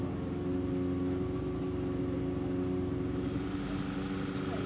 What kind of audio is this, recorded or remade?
recorded